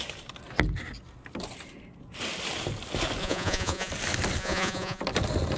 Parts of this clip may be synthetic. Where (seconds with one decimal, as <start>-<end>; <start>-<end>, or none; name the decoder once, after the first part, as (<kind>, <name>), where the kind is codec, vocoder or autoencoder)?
3.2-3.9 (vocoder, Vocos); 4.4-5.0